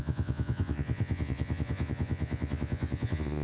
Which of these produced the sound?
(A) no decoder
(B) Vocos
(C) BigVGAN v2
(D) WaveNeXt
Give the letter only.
B